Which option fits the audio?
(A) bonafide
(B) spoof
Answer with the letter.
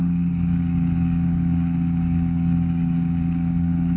B